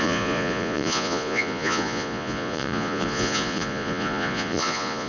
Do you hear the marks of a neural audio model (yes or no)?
yes